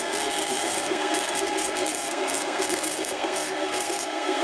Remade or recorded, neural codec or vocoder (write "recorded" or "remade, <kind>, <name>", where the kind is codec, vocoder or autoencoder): remade, codec, SNAC